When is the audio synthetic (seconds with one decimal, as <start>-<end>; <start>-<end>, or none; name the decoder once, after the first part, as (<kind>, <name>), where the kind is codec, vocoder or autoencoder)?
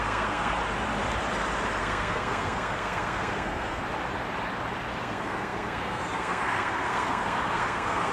0.0-0.6 (codec, SNAC); 1.8-3.8; 5.0-8.1